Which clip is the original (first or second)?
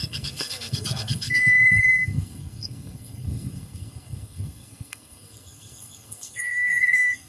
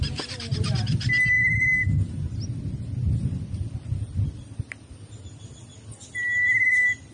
second